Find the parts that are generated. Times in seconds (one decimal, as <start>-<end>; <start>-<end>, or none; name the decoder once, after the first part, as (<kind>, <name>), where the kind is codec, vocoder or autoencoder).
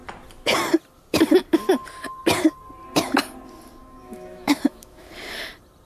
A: 3.8-5.1 (autoencoder, DAC-VAE)